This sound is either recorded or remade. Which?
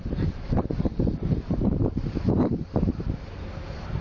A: remade